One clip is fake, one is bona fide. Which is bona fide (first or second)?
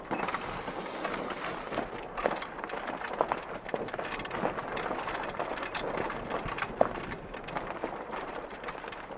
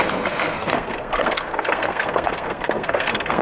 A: first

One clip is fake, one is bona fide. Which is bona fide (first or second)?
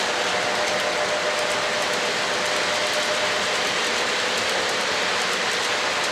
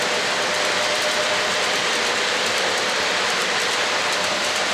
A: first